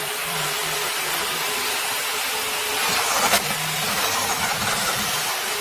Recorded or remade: remade